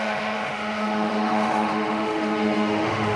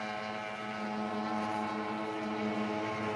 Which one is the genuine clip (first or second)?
second